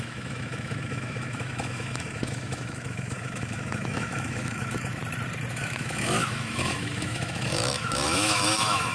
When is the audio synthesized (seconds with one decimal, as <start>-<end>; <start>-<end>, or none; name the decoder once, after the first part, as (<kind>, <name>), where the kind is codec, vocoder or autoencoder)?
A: 0.0-5.0 (autoencoder, DAC-VAE); 5.5-8.9